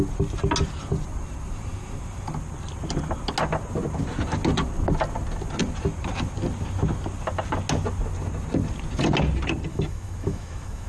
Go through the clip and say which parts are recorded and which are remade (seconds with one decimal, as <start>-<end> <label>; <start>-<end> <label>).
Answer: 0.0-9.7 recorded; 9.7-10.9 remade